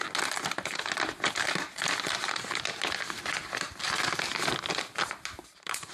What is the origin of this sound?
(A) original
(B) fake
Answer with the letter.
A